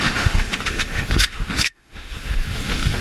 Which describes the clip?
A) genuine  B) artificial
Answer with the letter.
B